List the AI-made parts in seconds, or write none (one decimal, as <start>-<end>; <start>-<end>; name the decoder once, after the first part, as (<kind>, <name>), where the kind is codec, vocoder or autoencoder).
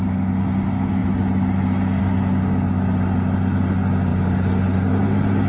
none